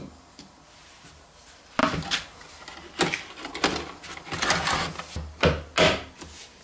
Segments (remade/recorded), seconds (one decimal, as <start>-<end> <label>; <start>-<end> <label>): 0.0-6.6 recorded